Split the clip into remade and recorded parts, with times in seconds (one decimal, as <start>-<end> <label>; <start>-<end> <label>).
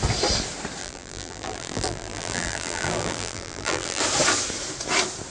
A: 0.0-0.8 recorded; 0.8-4.0 remade; 4.0-5.3 recorded